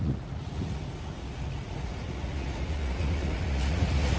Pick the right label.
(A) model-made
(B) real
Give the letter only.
A